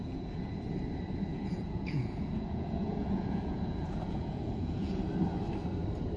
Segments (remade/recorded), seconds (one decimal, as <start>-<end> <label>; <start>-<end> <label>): 0.0-0.7 remade; 0.7-1.3 recorded; 1.3-5.0 remade; 5.0-6.2 recorded